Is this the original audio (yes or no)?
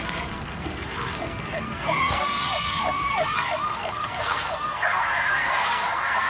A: no